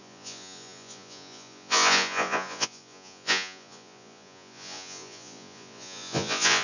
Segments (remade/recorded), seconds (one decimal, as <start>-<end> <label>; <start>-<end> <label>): 0.0-6.6 remade